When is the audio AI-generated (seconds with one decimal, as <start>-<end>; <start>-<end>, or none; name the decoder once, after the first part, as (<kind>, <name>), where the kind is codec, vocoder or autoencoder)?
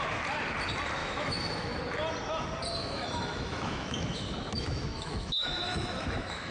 1.0-1.8 (autoencoder, DAC-VAE); 2.8-6.5